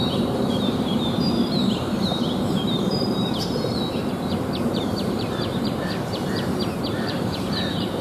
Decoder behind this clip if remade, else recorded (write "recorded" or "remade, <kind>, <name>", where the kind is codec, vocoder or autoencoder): remade, vocoder, BigVGAN v2